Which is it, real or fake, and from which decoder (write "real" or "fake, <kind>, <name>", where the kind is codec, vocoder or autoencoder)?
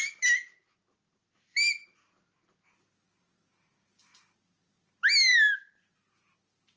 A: real